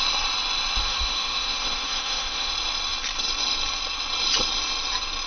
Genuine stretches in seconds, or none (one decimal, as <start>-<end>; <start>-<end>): 0.0-0.8; 2.5-5.3